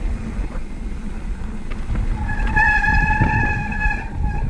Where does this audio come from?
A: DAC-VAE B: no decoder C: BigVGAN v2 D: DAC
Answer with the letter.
B